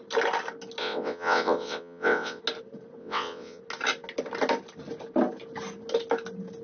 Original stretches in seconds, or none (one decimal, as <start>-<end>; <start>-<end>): 0.0-0.8; 2.4-3.0; 3.6-6.6